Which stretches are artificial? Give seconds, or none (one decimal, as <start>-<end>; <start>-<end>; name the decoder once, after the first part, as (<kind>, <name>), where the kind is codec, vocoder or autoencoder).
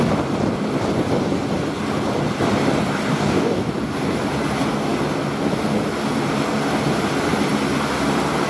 3.1-3.6 (codec, DAC)